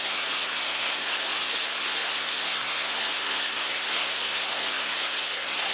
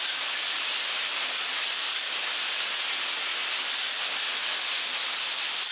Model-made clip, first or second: first